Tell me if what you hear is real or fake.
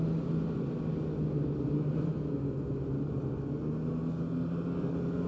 real